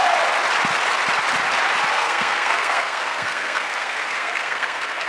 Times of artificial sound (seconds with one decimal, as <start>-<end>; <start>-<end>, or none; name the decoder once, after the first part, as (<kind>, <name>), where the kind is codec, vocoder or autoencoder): 1.9-5.1 (codec, SNAC)